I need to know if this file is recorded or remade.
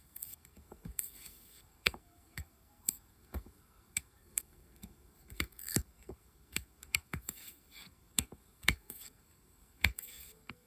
remade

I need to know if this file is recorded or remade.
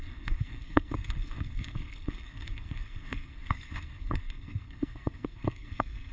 remade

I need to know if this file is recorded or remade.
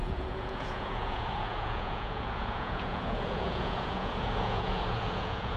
remade